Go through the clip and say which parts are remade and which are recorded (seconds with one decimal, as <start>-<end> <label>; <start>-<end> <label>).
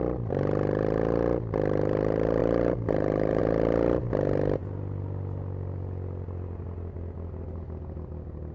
0.0-2.4 recorded; 2.4-3.4 remade; 3.4-8.5 recorded